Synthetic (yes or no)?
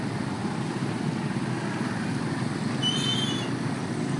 no